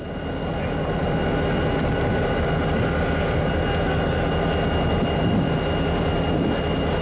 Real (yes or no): yes